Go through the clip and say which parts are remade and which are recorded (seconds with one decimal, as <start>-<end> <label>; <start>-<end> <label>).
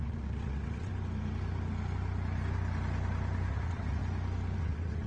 0.0-0.9 remade; 0.9-3.5 recorded; 3.5-4.0 remade; 4.0-4.6 recorded; 4.6-5.1 remade